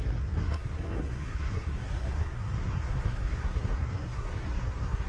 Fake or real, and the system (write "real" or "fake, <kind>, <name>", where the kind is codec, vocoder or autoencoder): fake, codec, SNAC